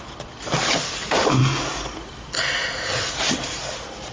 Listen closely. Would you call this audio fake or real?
real